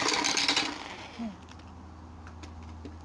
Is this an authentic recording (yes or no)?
yes